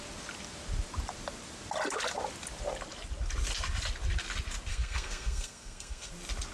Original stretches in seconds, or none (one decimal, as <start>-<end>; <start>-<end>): 0.0-4.7; 6.1-6.5